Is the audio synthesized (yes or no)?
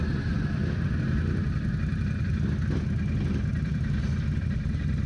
no